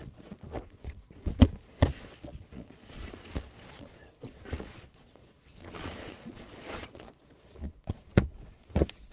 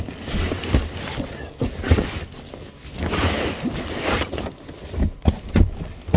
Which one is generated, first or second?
first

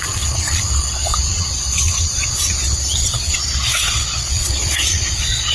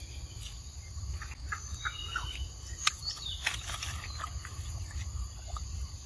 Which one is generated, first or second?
first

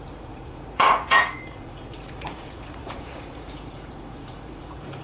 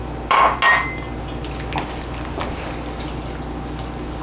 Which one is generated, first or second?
first